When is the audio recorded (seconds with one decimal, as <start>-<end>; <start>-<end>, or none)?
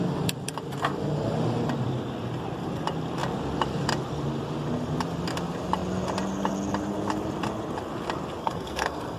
0.0-8.4